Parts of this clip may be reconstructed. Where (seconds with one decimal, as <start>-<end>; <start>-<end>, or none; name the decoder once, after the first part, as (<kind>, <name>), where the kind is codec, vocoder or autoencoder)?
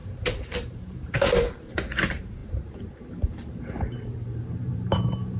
0.0-5.4 (vocoder, BigVGAN v2)